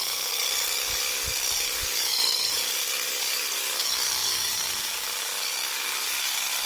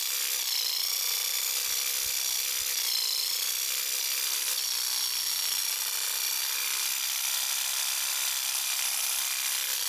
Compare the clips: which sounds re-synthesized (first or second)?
first